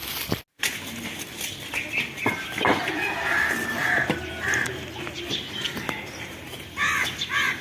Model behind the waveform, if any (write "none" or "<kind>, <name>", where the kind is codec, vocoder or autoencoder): none